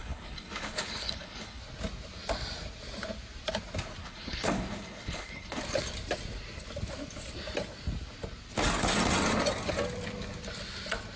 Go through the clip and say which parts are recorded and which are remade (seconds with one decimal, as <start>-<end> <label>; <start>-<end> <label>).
0.0-1.6 remade; 1.6-4.0 recorded; 4.0-5.6 remade; 5.6-11.2 recorded